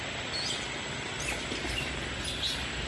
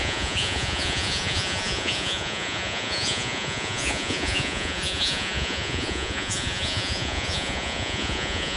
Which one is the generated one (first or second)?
second